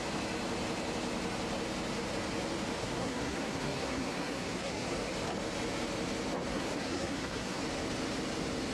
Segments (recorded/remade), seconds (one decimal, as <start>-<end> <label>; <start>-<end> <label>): 0.0-2.8 recorded; 2.8-5.1 remade; 5.1-6.5 recorded; 6.5-7.6 remade; 7.6-8.7 recorded